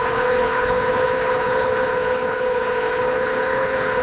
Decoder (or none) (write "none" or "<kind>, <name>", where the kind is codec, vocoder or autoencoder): codec, HILCodec